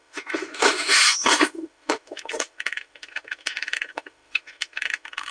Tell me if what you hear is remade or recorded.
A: remade